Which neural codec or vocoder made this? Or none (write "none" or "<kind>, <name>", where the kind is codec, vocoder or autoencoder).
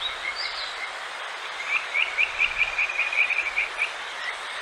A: none